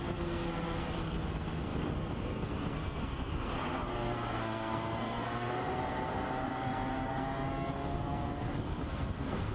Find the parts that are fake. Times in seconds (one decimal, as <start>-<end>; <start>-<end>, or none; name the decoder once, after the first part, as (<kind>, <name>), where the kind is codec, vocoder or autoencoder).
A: 0.0-9.5 (codec, SNAC)